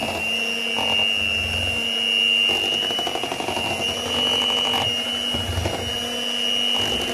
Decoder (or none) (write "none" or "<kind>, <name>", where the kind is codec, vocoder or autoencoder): none